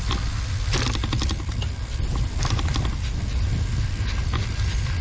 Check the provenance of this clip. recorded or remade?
recorded